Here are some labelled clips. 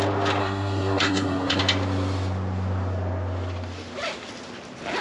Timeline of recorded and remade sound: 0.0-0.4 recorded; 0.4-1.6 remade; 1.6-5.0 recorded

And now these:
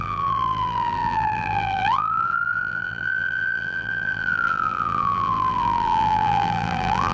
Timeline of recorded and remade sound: 0.0-7.1 remade

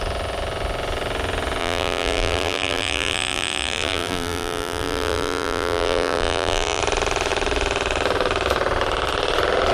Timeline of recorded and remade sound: 0.0-1.6 recorded; 1.6-6.8 remade; 6.8-9.7 recorded

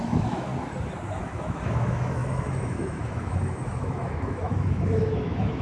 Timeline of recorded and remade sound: 0.0-0.5 remade; 0.5-1.2 recorded; 1.2-5.6 remade